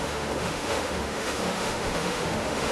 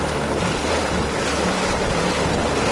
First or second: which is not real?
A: first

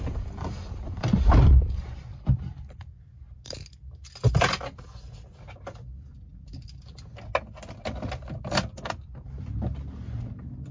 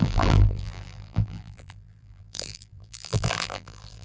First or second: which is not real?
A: second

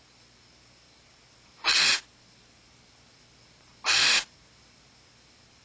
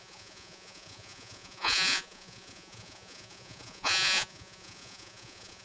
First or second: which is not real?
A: second